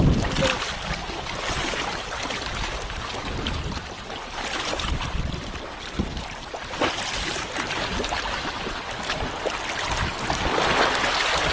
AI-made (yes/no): no